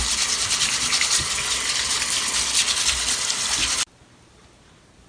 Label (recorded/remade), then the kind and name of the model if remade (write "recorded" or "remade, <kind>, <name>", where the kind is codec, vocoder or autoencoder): recorded